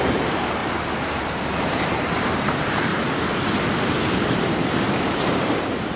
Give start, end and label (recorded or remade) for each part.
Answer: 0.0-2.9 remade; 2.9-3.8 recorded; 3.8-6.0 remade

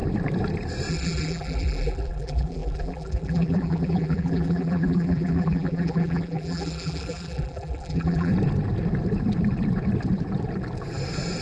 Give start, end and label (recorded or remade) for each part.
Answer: 0.0-0.9 recorded; 0.9-8.3 remade; 8.3-11.4 recorded

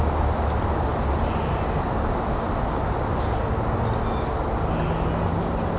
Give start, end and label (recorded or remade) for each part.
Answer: 0.0-5.8 recorded

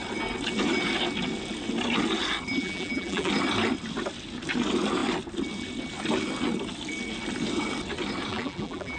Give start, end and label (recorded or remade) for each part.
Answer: 0.0-2.6 recorded; 2.6-3.3 remade; 3.3-8.3 recorded; 8.3-9.0 remade

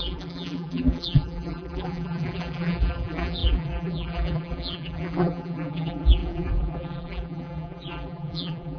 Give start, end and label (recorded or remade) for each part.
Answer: 0.0-8.8 remade